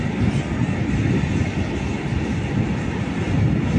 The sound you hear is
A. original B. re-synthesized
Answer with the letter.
A